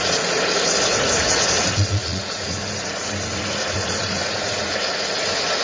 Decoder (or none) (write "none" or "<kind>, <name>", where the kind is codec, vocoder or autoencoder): vocoder, Vocos